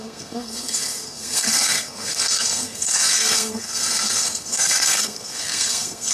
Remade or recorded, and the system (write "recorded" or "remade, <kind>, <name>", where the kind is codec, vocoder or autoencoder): remade, codec, SNAC